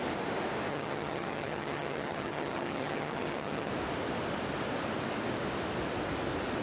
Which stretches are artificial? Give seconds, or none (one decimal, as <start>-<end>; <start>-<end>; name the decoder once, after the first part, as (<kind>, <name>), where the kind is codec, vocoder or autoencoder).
0.7-3.7 (vocoder, HiFi-GAN)